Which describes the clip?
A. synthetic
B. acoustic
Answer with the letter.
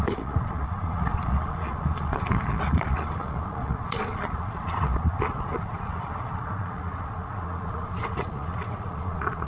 A